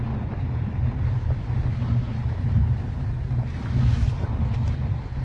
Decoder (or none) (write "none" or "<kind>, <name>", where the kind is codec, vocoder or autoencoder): none